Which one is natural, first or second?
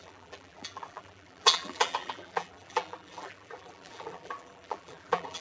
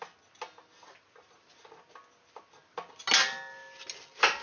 second